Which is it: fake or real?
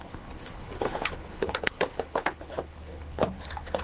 fake